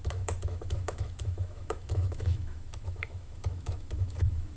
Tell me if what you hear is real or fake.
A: fake